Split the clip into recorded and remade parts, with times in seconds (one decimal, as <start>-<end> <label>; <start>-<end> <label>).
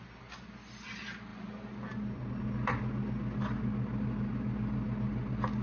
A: 0.0-5.6 recorded